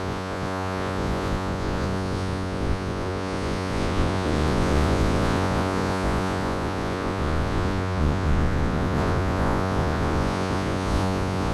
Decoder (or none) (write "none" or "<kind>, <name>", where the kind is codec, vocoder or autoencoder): vocoder, Vocos